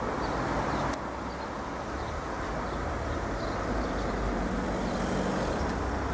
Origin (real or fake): real